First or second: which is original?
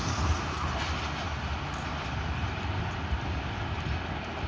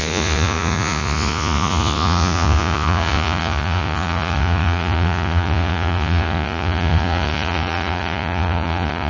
first